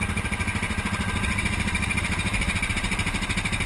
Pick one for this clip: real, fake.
real